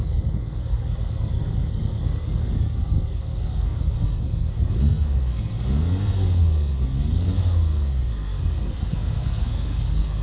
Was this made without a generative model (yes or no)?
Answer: no